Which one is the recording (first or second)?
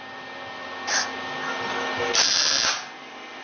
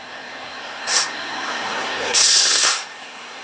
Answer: first